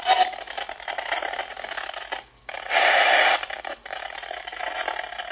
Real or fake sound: real